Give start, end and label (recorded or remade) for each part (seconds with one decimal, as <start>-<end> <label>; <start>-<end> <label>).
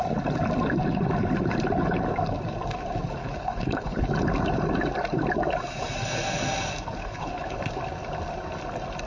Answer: 0.0-3.2 recorded; 3.2-4.0 remade; 4.0-7.0 recorded; 7.0-7.6 remade; 7.6-9.1 recorded